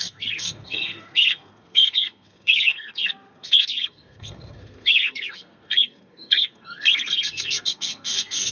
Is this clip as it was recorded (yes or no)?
no